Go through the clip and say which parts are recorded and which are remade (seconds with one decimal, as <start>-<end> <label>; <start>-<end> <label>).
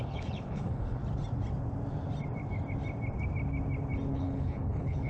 0.0-1.0 remade; 1.0-4.1 recorded; 4.1-5.1 remade